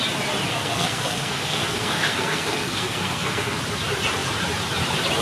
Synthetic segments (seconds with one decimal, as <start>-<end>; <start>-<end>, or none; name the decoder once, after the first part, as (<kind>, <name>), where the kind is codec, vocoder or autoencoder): 0.5-3.6 (codec, SNAC)